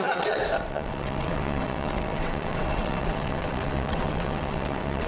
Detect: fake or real fake